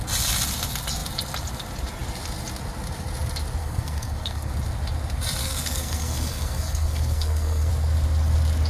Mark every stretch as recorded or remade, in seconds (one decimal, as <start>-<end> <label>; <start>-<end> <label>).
0.0-3.6 recorded; 3.6-4.5 remade; 4.5-5.4 recorded; 5.4-7.7 remade; 7.7-8.7 recorded